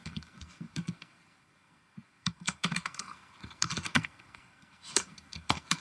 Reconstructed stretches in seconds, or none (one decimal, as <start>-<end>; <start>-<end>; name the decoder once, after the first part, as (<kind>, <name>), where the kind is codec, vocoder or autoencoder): 0.0-5.8 (codec, SNAC)